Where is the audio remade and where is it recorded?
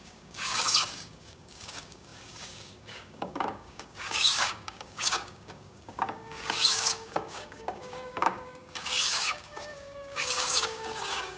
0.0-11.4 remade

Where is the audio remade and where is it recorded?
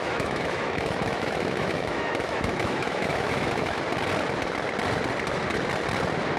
0.0-3.8 remade; 3.8-6.4 recorded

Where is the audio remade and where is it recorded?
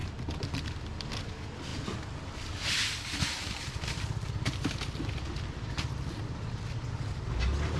0.0-7.8 recorded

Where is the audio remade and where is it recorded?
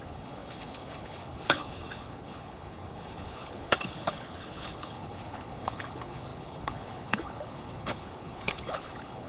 0.0-9.3 remade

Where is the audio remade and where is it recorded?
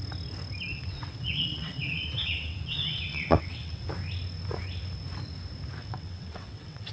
0.0-0.7 recorded; 0.7-3.9 remade; 3.9-5.8 recorded; 5.8-6.9 remade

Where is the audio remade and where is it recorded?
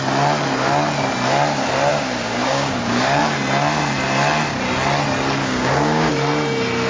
0.0-1.9 recorded; 1.9-3.2 remade; 3.2-5.4 recorded; 5.4-6.1 remade; 6.1-6.9 recorded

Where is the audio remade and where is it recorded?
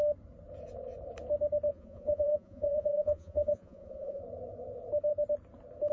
0.0-1.7 recorded; 1.7-4.2 remade; 4.2-5.9 recorded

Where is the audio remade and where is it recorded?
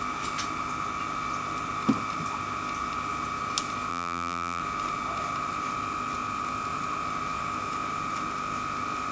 0.0-3.9 recorded; 3.9-4.6 remade; 4.6-9.1 recorded